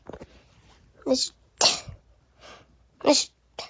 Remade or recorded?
recorded